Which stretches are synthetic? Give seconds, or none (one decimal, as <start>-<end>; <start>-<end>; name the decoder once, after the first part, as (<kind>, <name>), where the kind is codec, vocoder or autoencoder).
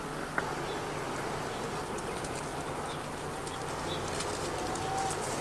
none